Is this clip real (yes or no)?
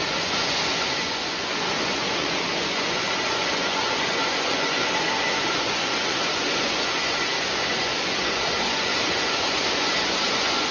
no